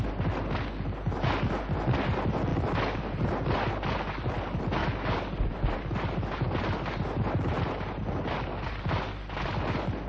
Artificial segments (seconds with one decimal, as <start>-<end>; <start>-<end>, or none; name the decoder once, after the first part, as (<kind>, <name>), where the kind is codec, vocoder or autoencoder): none